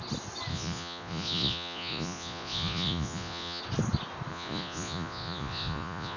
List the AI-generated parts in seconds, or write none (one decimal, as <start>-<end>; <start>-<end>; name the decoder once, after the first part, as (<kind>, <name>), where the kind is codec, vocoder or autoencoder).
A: 0.5-3.6 (vocoder, Vocos); 4.3-6.2

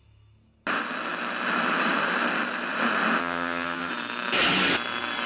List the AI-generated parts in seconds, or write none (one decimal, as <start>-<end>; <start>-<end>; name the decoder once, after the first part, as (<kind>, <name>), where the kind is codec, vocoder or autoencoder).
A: 3.2-3.9 (vocoder, HiFi-GAN)